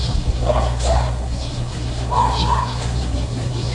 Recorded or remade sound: remade